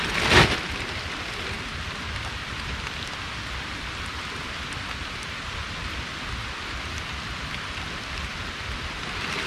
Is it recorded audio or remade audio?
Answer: recorded